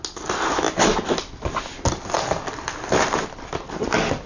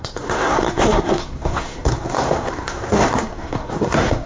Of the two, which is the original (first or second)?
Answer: first